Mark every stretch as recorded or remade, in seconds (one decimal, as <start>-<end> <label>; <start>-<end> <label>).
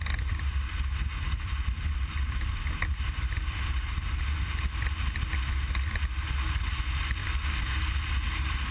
0.0-7.2 recorded; 7.2-7.9 remade; 7.9-8.7 recorded